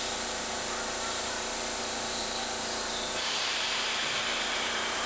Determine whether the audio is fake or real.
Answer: fake